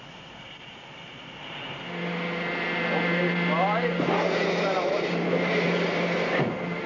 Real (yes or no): yes